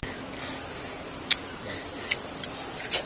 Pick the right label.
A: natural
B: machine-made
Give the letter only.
A